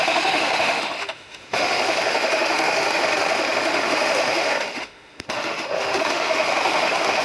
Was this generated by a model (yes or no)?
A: yes